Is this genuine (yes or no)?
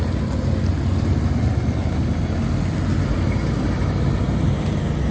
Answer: yes